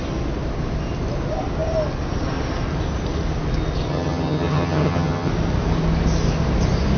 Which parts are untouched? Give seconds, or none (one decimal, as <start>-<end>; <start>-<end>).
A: 0.0-3.9; 5.3-7.0

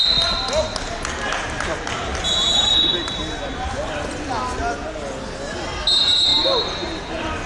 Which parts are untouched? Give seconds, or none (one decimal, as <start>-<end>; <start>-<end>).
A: 0.0-2.1; 2.7-3.5; 4.3-7.5

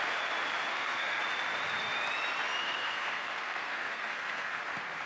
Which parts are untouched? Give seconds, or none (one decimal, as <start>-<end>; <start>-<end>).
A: 0.0-0.7; 1.2-2.6; 4.6-5.1

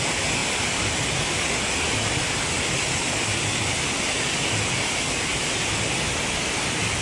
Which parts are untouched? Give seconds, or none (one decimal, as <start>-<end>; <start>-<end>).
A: 0.0-7.0

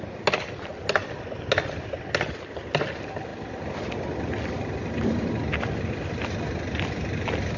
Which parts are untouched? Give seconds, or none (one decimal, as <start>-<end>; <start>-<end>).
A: 0.0-7.6

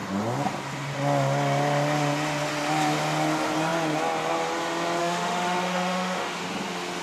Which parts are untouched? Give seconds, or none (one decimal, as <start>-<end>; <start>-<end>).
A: 0.0-5.0; 6.4-7.0